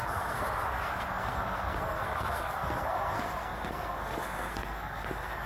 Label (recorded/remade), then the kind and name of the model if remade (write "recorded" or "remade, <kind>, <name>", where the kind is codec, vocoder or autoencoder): remade, codec, SNAC